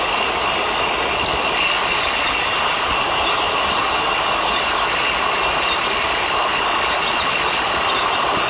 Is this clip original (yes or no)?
yes